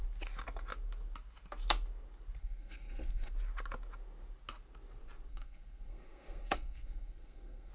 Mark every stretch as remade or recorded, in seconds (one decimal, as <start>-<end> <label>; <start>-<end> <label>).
0.0-2.4 recorded; 2.4-3.3 remade; 3.3-5.3 recorded; 5.3-7.7 remade

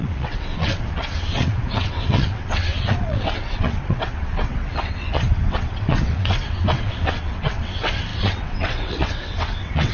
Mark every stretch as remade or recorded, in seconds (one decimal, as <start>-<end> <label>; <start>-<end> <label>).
0.0-9.9 remade

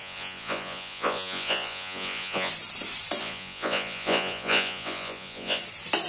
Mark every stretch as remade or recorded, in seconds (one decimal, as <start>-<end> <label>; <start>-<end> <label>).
0.0-2.5 remade; 2.5-3.2 recorded; 3.2-5.6 remade; 5.6-6.1 recorded

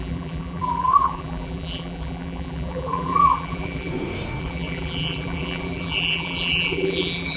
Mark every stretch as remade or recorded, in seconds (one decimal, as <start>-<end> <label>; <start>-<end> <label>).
0.0-3.9 remade; 3.9-4.4 recorded; 4.4-7.4 remade

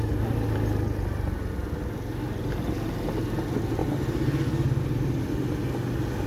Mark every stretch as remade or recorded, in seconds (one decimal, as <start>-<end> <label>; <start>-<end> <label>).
0.0-6.3 recorded